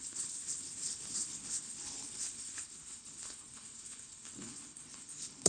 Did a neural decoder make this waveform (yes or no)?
yes